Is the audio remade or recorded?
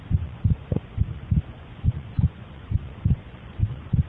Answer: remade